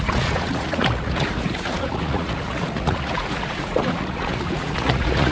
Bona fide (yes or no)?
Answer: no